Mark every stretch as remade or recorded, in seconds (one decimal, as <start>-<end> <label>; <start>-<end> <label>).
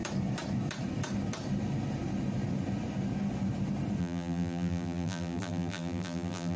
0.0-4.0 recorded; 4.0-6.6 remade